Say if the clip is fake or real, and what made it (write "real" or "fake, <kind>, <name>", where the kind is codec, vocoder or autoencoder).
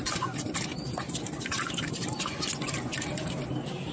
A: real